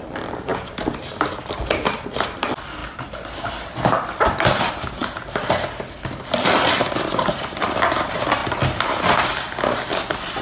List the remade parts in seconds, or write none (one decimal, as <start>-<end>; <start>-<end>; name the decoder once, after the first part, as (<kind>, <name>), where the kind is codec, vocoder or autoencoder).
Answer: 0.0-0.5 (vocoder, BigVGAN v2); 1.4-2.8; 3.3-8.4; 10.0-10.4